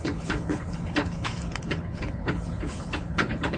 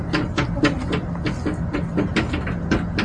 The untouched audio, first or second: second